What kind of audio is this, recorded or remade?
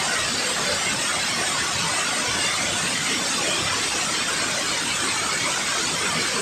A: recorded